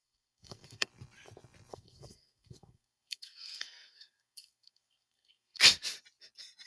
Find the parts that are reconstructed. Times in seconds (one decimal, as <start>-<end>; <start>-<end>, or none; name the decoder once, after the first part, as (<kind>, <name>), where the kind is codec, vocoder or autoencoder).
0.0-0.9 (codec, SNAC); 1.7-5.6